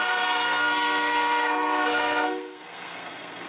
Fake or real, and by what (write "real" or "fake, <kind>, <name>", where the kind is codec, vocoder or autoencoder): fake, codec, SNAC